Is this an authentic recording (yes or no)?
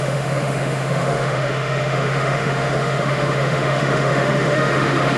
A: no